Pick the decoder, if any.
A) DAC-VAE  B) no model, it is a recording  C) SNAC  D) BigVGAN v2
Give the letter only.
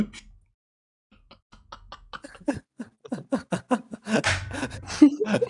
B